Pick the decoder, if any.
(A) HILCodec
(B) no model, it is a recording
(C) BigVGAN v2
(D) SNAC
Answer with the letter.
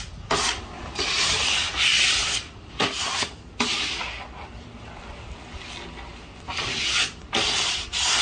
B